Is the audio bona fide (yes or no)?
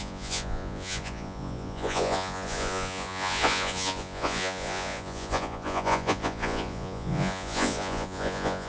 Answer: no